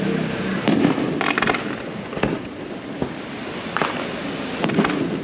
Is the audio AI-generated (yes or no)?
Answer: no